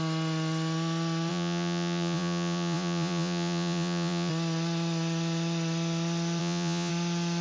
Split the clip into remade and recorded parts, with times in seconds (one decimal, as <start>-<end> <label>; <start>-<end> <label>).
0.0-1.3 recorded; 1.3-4.3 remade; 4.3-6.4 recorded; 6.4-6.9 remade; 6.9-7.4 recorded